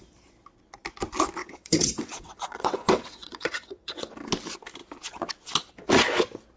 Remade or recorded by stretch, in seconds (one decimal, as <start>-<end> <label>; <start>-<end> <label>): 0.0-1.4 recorded; 1.4-4.1 remade; 4.1-6.6 recorded